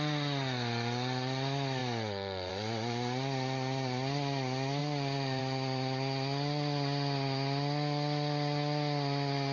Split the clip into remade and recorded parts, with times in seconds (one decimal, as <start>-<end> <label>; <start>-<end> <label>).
0.0-4.8 recorded; 4.8-5.4 remade; 5.4-9.5 recorded